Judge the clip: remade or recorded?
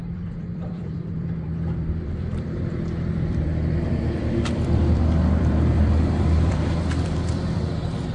remade